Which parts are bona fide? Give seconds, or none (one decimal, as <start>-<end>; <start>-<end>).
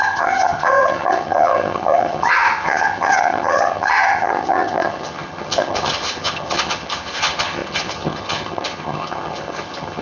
none